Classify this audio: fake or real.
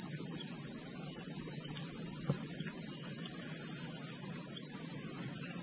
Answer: real